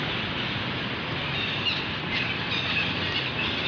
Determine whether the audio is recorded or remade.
recorded